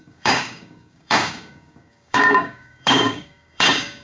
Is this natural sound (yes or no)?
no